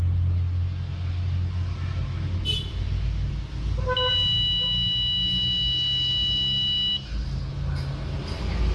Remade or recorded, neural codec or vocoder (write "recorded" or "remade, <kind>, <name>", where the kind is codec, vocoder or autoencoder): recorded